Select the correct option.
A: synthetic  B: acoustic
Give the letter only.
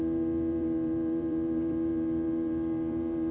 A